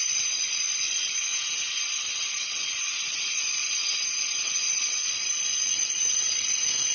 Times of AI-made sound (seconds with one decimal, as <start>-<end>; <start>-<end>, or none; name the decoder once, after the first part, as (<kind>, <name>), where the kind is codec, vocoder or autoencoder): 0.0-1.3 (vocoder, Vocos); 1.9-3.8; 4.8-6.9